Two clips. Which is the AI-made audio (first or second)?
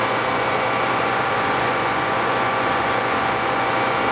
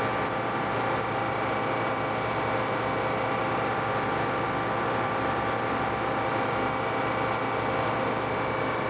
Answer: first